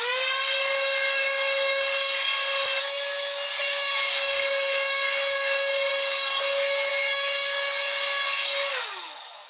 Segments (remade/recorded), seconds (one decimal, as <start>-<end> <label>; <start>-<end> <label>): 0.0-2.3 remade; 2.3-2.8 recorded; 2.8-9.5 remade